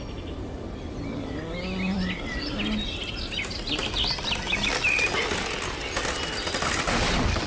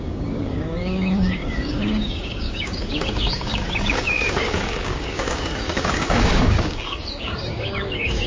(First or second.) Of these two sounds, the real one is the first